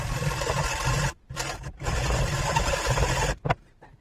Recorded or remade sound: remade